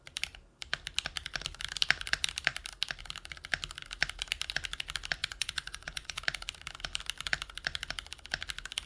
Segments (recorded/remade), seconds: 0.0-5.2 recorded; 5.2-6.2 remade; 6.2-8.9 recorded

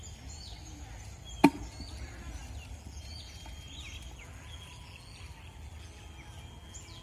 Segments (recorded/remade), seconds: 0.0-7.0 recorded

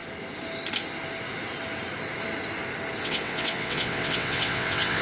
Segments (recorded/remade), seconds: 0.0-3.0 recorded; 3.0-5.0 remade

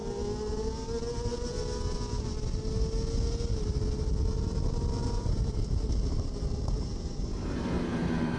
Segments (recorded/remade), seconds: 0.0-5.0 recorded; 5.0-8.4 remade

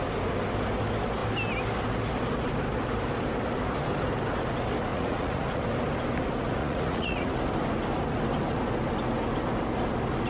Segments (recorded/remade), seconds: 0.0-4.9 recorded; 4.9-5.6 remade; 5.6-6.6 recorded; 6.6-7.3 remade; 7.3-10.3 recorded

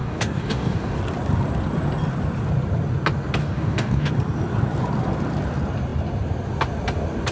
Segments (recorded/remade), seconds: 0.0-1.0 remade; 1.0-3.4 recorded; 3.4-4.1 remade; 4.1-7.3 recorded